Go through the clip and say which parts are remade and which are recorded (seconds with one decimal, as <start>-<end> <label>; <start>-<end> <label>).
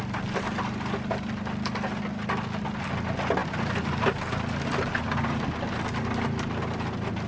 0.0-7.3 recorded